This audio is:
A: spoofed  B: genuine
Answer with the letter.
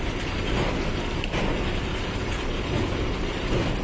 B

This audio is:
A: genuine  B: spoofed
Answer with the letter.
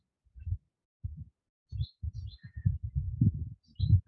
A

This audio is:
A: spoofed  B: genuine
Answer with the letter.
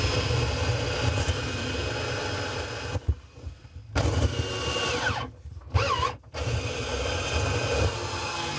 B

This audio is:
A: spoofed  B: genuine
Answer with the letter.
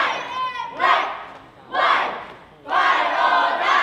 B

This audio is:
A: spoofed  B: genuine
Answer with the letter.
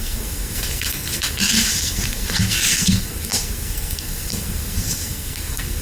A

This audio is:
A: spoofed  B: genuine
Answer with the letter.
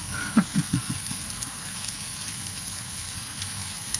A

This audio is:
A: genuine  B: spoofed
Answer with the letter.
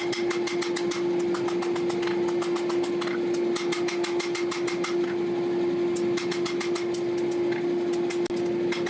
A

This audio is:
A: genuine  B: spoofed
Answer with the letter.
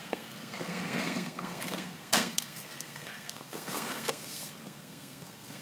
B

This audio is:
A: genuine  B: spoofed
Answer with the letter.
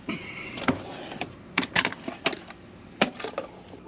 A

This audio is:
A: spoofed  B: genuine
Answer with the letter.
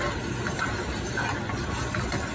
B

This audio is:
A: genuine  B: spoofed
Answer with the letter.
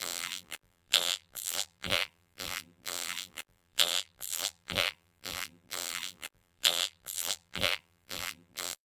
B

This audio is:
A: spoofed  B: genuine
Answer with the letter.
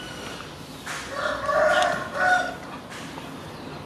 B